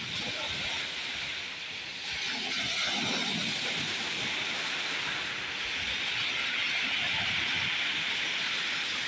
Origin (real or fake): real